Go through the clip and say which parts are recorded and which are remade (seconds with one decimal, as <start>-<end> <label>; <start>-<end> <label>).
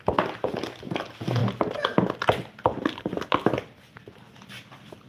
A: 0.0-5.1 recorded